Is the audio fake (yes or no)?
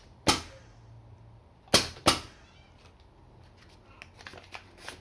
no